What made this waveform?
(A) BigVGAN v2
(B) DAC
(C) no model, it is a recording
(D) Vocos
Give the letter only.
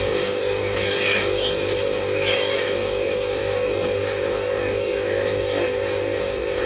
B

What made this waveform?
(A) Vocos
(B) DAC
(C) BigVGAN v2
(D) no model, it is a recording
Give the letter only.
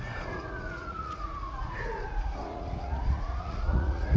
A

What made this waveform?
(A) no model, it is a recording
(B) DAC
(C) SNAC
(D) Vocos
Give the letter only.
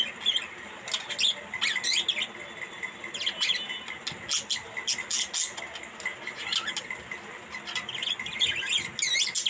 A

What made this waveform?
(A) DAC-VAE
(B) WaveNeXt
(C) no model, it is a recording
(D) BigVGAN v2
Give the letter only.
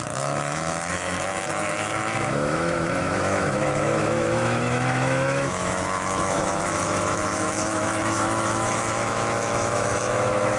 A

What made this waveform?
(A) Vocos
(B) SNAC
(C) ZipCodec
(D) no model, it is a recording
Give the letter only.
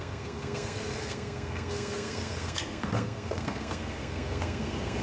B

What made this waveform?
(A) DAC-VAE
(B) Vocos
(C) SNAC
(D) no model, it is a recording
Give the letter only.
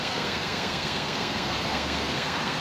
C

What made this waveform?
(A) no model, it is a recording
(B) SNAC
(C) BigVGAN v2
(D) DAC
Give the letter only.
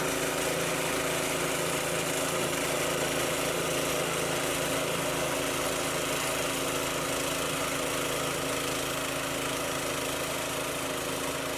A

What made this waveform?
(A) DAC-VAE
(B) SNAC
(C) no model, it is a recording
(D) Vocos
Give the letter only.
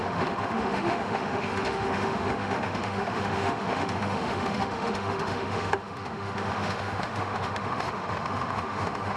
A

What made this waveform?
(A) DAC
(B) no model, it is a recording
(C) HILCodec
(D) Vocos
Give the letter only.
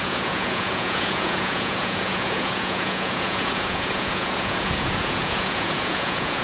D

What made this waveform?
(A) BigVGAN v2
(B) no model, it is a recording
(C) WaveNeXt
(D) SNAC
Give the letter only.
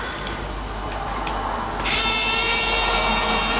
B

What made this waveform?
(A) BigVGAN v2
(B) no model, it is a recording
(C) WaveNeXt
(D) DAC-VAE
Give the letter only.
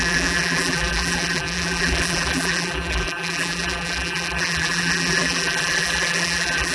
A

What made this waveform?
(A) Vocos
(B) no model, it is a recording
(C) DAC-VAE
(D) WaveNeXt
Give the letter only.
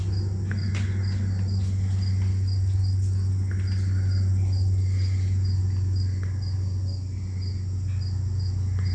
B